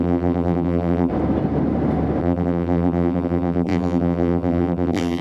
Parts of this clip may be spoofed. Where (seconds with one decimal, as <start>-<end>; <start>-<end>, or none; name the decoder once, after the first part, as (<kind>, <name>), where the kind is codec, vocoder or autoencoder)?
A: 0.0-1.1 (vocoder, BigVGAN v2); 2.2-5.2